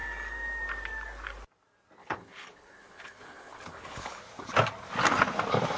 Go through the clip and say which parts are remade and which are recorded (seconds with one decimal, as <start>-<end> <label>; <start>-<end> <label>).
0.0-2.0 recorded; 2.0-4.2 remade; 4.2-5.8 recorded